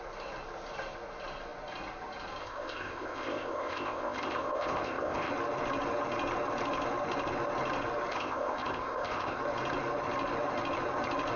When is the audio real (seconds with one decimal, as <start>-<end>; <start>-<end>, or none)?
0.0-2.4; 5.3-8.1; 9.4-11.4